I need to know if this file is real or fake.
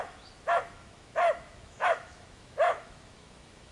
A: fake